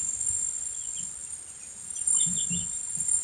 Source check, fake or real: real